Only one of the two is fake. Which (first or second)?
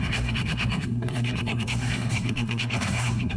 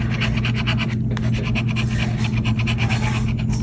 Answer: first